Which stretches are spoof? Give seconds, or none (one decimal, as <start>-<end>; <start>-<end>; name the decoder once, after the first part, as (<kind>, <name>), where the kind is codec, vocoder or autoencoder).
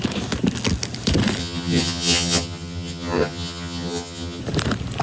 1.4-4.4 (vocoder, HiFi-GAN)